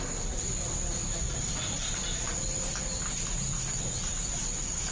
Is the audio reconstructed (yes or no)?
no